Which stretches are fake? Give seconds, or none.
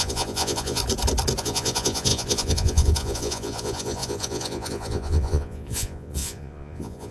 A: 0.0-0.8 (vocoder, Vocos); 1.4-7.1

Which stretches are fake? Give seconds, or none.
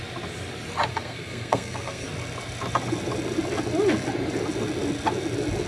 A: 0.9-2.1 (codec, SNAC)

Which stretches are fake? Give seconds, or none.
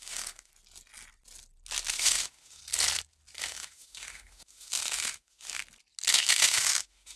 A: 0.0-0.5 (autoencoder, DAC-VAE); 1.9-2.6; 3.4-5.6; 6.1-7.2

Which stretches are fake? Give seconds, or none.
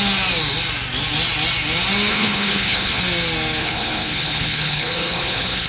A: 2.1-3.0 (codec, HILCodec); 3.6-5.7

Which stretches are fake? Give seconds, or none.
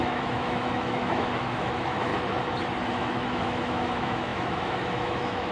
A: 0.0-2.1 (autoencoder, DAC-VAE); 2.9-5.5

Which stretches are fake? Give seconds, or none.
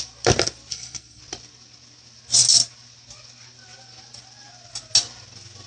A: 0.7-1.2 (codec, SNAC)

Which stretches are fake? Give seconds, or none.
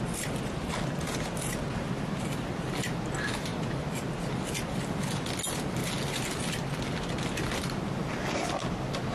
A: none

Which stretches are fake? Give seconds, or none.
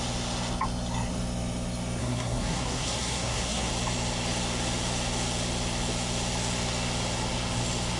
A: 2.0-3.7 (codec, SNAC)